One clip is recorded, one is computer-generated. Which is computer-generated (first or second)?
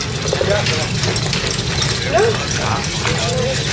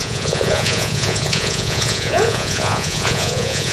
second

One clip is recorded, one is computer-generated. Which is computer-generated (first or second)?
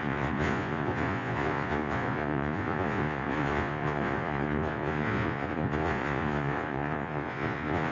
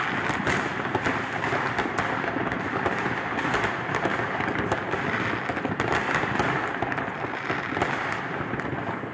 first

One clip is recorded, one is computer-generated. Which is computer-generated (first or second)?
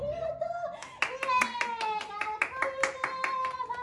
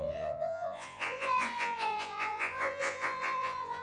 second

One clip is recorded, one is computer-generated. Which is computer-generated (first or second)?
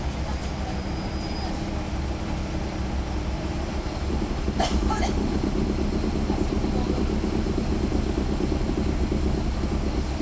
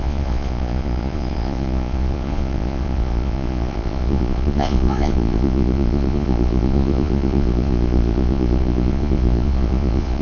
second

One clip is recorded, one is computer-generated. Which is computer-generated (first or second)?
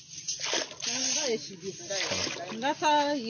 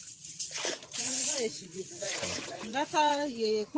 second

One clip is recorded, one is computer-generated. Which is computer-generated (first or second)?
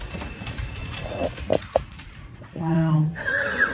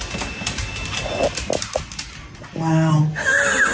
first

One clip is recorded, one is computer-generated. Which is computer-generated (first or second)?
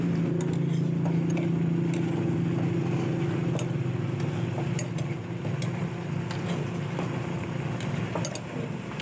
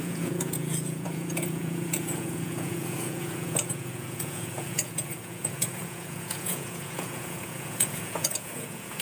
second